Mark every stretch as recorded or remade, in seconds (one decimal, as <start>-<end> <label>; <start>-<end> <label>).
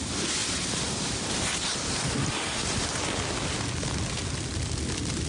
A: 0.0-5.3 recorded